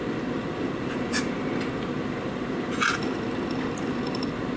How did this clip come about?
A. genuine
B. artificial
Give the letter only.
A